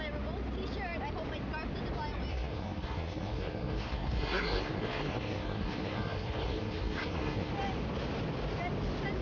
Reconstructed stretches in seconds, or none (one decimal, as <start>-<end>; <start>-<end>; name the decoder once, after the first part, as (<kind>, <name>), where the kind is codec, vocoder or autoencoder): 2.3-7.5 (codec, SNAC)